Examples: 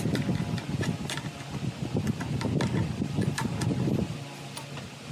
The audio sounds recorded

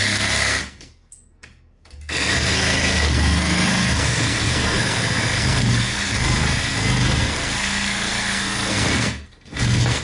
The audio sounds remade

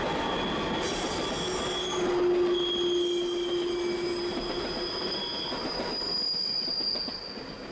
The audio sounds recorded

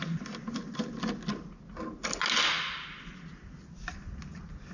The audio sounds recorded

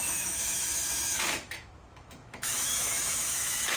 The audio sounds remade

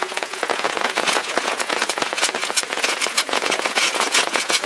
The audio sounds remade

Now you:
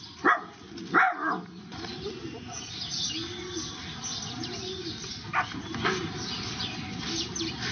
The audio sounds recorded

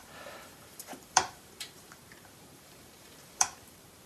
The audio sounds remade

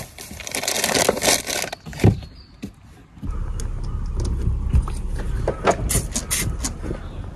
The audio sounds recorded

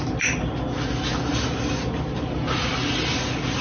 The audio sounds recorded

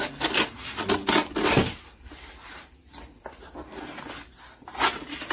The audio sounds recorded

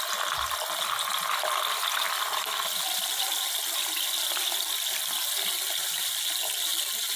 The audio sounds recorded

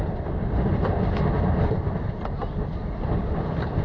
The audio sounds remade